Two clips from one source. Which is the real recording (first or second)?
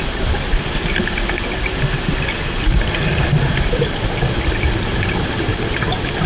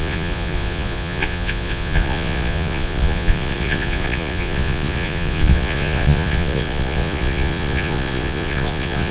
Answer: first